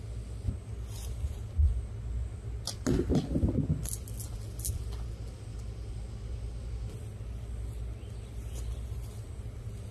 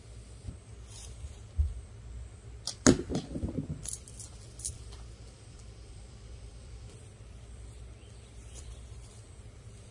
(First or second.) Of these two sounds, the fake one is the second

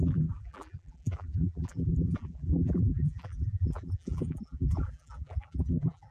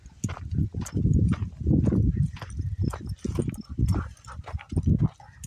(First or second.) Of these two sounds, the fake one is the first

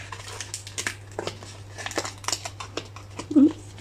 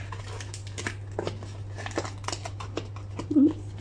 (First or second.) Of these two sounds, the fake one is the second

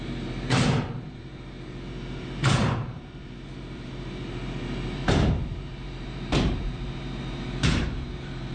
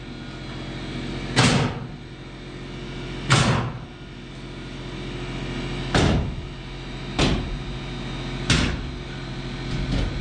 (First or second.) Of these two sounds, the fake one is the first